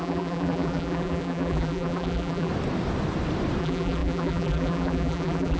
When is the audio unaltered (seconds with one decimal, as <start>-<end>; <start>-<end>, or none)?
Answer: 2.5-3.6